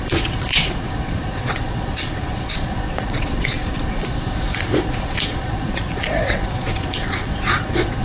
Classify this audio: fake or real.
fake